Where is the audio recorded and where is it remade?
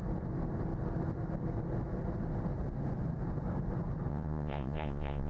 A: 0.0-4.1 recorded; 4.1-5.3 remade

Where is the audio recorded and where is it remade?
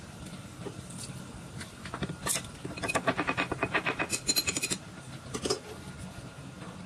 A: 0.0-6.9 recorded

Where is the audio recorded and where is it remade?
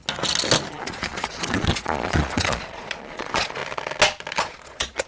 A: 0.0-0.7 recorded; 0.7-3.6 remade; 3.6-4.3 recorded; 4.3-5.1 remade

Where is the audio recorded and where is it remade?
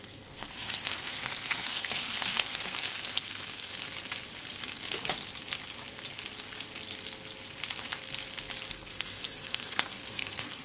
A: 0.0-3.7 remade; 3.7-8.7 recorded; 8.7-10.6 remade